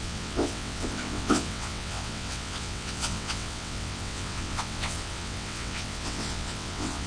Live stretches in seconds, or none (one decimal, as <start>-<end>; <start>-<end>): none